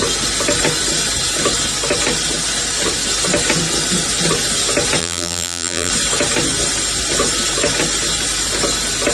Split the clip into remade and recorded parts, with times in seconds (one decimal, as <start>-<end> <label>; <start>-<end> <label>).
0.0-5.0 recorded; 5.0-5.9 remade; 5.9-9.1 recorded